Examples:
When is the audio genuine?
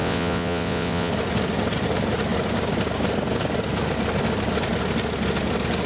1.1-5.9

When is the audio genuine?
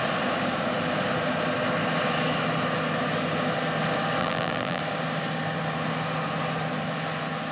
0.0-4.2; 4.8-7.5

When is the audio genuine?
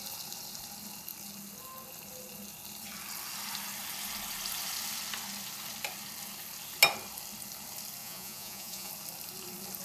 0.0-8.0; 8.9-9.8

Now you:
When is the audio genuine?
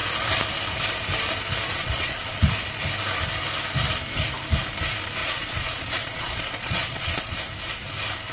0.0-1.7; 2.4-5.2; 7.4-8.3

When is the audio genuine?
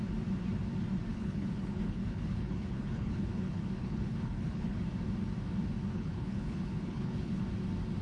0.0-1.1; 4.8-5.9; 7.4-8.0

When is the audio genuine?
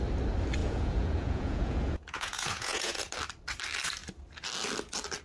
0.0-0.6; 3.1-5.2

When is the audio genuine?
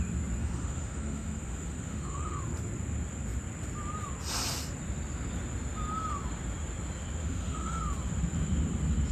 0.0-0.4; 2.4-7.2; 7.8-9.1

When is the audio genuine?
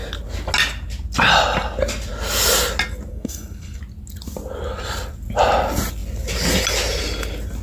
0.0-3.1; 3.8-7.6